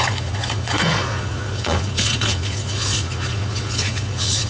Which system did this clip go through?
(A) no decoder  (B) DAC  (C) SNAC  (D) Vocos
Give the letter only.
D